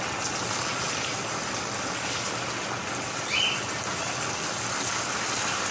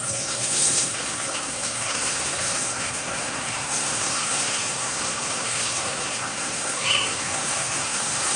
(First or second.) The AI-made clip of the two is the second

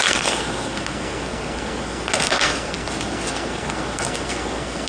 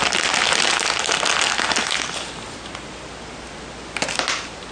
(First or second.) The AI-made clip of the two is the first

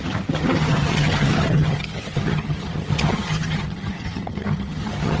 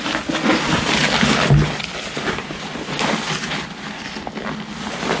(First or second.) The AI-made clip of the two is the first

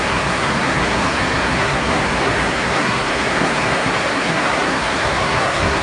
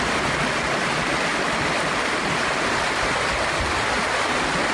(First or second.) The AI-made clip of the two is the first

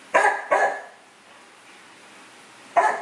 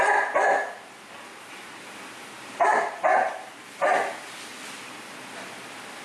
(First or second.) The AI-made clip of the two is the second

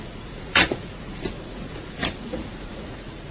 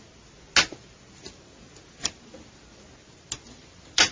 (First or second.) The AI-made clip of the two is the first